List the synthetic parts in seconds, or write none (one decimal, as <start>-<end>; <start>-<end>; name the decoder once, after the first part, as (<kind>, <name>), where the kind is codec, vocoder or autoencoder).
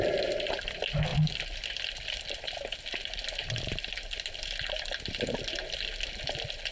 none